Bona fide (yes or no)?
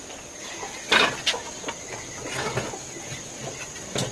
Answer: yes